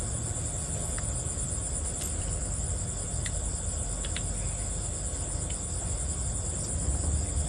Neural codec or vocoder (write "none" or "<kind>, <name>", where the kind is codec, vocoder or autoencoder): none